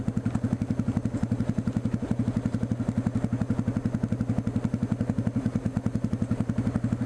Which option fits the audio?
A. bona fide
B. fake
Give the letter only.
A